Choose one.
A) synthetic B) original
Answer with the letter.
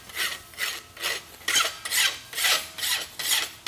B